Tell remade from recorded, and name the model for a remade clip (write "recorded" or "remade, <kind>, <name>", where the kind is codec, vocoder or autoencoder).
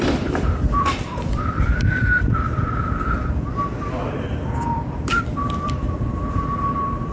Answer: remade, vocoder, BigVGAN v2